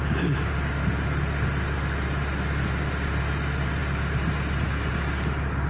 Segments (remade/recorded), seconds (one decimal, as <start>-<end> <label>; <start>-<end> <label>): 0.0-5.7 recorded